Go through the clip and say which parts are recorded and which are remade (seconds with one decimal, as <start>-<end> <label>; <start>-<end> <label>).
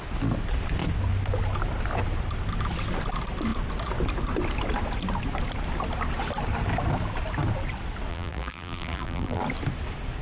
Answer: 0.0-8.1 recorded; 8.1-9.4 remade; 9.4-10.2 recorded